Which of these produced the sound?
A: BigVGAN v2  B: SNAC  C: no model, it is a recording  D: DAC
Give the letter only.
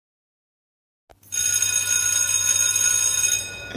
C